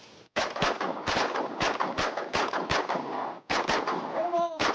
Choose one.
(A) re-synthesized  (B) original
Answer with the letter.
B